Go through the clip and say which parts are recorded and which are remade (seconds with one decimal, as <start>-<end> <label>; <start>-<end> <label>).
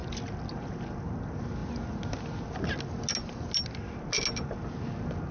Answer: 0.0-5.3 recorded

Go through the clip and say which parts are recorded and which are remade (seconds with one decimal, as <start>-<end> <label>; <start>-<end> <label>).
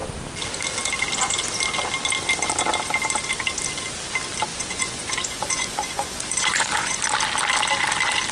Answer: 0.0-4.5 recorded; 4.5-7.0 remade; 7.0-8.3 recorded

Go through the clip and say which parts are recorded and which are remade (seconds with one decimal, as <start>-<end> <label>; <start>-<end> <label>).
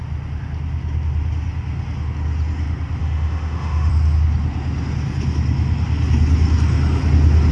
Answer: 0.0-3.0 recorded; 3.0-3.9 remade; 3.9-7.5 recorded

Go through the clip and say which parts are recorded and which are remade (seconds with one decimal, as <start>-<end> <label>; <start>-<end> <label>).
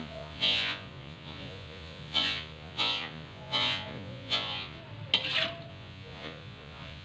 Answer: 0.0-4.8 remade; 4.8-5.7 recorded; 5.7-7.0 remade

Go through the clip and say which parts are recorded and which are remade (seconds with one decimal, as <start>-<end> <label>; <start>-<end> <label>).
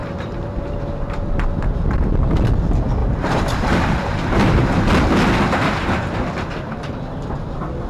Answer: 0.0-2.1 remade; 2.1-3.0 recorded; 3.0-4.8 remade; 4.8-7.9 recorded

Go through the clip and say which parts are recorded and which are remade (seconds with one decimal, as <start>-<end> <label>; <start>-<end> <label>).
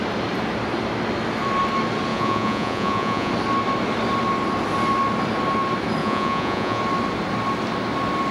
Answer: 0.0-2.1 recorded; 2.1-3.3 remade; 3.3-6.0 recorded; 6.0-6.8 remade; 6.8-8.3 recorded